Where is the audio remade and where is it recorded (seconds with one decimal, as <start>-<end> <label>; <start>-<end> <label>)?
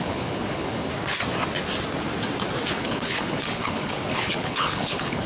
0.0-0.9 remade; 0.9-2.7 recorded; 2.7-5.3 remade